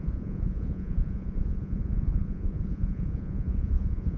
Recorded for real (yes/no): no